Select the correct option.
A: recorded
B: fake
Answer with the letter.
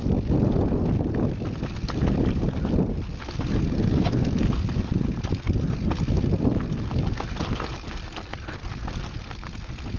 A